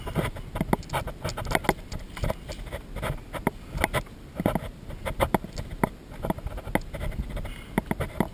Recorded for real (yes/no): yes